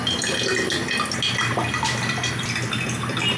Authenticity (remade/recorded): recorded